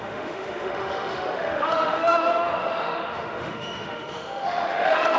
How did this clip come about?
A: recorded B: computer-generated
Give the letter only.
B